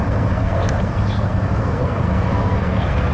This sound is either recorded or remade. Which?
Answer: remade